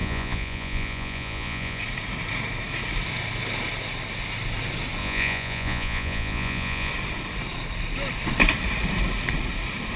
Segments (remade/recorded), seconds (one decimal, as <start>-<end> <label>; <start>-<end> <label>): 0.0-1.8 remade; 1.8-5.0 recorded; 5.0-6.9 remade; 6.9-10.0 recorded